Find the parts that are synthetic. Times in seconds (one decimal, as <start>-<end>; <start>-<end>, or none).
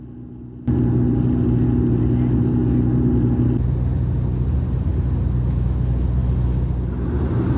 none